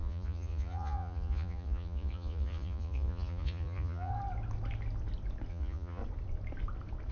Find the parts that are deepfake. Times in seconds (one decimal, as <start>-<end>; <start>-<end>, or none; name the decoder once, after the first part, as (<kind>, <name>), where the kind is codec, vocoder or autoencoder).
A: 0.0-4.1 (vocoder, Vocos); 5.5-6.0